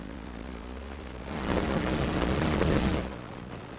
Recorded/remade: remade